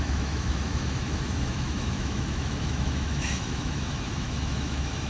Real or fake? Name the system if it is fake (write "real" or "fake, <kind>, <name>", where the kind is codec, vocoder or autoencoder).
fake, autoencoder, DAC-VAE